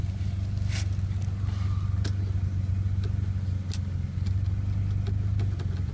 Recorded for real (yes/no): yes